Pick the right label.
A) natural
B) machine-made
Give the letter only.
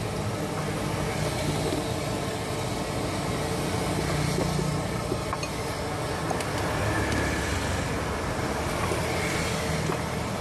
A